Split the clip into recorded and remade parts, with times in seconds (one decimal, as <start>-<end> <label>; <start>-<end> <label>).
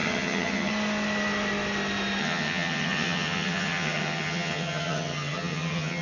0.0-0.7 remade; 0.7-2.2 recorded; 2.2-6.0 remade